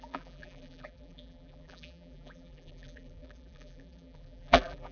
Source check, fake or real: fake